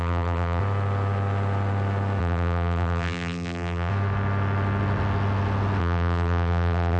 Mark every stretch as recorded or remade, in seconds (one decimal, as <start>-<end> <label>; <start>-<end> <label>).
0.0-0.6 remade; 0.6-2.2 recorded; 2.2-3.9 remade; 3.9-5.8 recorded; 5.8-7.0 remade